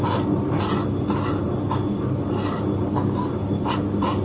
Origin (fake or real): real